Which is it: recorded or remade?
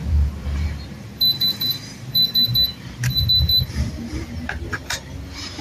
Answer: remade